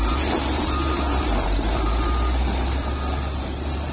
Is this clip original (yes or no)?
no